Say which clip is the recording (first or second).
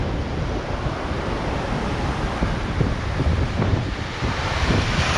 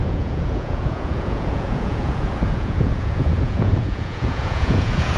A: first